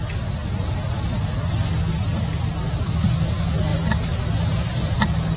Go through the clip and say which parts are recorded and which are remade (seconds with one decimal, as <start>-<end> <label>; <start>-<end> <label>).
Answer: 0.0-0.4 recorded; 0.4-1.3 remade; 1.3-5.4 recorded